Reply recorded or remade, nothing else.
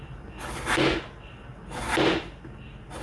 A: recorded